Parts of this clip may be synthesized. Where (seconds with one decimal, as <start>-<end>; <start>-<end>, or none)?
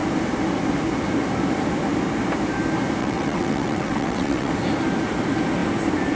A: 3.0-4.5